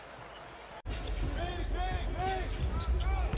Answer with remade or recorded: recorded